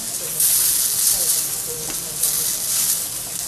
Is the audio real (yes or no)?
yes